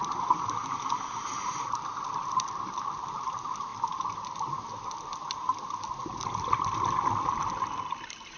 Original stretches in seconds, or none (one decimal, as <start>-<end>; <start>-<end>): 0.0-8.4